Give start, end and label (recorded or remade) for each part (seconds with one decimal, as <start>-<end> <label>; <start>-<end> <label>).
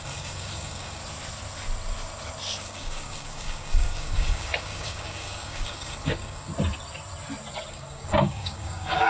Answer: 0.0-1.0 remade; 1.0-2.6 recorded; 2.6-6.5 remade; 6.5-7.7 recorded; 7.7-9.1 remade